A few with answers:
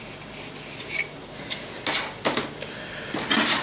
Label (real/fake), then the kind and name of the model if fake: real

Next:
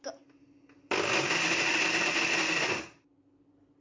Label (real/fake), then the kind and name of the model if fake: real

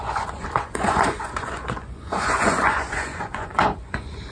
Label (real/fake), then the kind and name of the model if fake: fake, vocoder, Vocos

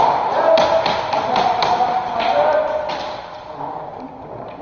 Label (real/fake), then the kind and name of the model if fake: real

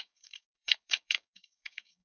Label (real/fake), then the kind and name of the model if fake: fake, codec, DAC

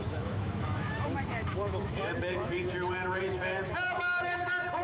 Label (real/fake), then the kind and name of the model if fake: fake, autoencoder, DAC-VAE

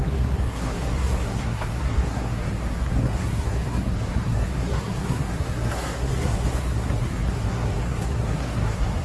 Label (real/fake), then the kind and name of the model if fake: fake, codec, SNAC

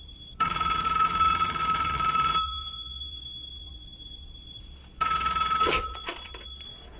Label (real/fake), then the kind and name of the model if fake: fake, vocoder, Vocos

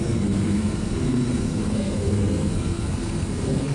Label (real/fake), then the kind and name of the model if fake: fake, codec, SNAC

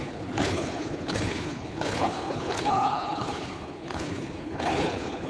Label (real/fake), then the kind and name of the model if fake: fake, codec, HILCodec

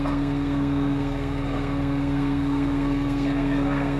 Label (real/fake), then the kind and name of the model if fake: fake, codec, SNAC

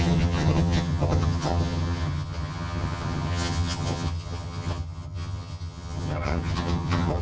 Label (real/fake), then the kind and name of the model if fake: fake, vocoder, HiFi-GAN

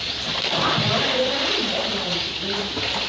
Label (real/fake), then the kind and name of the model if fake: fake, vocoder, BigVGAN v2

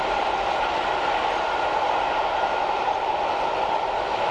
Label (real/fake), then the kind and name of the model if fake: real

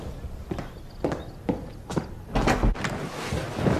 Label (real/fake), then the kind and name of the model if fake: real